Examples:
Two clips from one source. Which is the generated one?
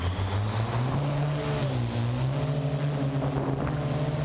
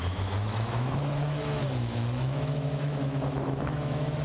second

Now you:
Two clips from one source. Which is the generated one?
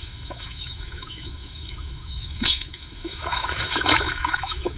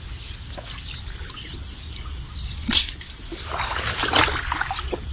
first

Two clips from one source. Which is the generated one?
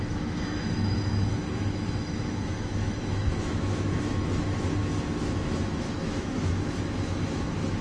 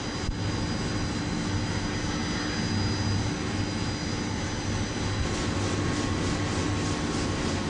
first